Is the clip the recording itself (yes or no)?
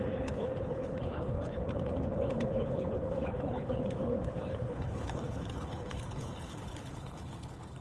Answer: no